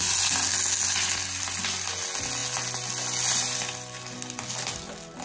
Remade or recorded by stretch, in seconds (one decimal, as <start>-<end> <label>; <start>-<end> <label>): 0.0-5.2 recorded

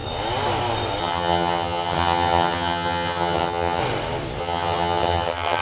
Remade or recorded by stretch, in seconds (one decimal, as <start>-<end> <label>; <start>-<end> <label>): 0.0-1.0 recorded; 1.0-3.8 remade; 3.8-4.4 recorded; 4.4-5.6 remade